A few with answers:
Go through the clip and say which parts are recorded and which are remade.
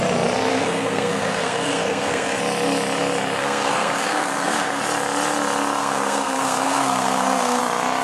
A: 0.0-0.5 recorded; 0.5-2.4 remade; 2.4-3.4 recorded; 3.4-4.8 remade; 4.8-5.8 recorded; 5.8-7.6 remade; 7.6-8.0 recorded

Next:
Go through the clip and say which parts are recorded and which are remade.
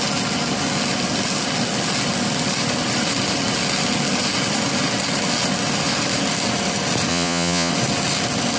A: 0.0-7.1 recorded; 7.1-7.7 remade; 7.7-8.6 recorded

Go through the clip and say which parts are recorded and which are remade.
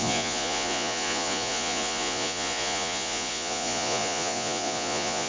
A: 0.0-5.3 remade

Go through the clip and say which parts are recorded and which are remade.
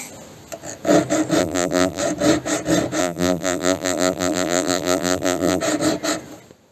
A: 0.0-1.4 recorded; 1.4-2.0 remade; 2.0-3.0 recorded; 3.0-5.6 remade; 5.6-6.7 recorded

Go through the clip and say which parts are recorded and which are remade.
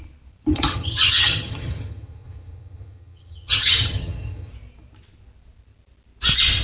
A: 0.0-0.5 recorded; 0.5-4.5 remade; 4.5-6.6 recorded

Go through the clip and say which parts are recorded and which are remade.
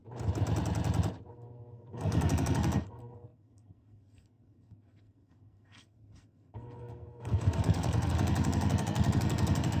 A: 0.0-1.3 recorded; 1.3-9.8 remade